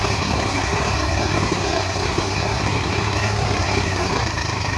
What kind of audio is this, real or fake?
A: fake